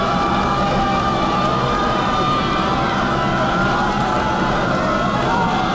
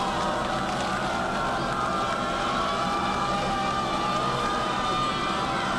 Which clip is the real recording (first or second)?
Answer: second